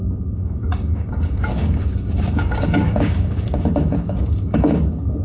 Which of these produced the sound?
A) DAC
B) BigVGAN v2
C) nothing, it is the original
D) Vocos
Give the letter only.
A